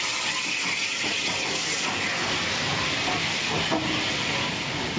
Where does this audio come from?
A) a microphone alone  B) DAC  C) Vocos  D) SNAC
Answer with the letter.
A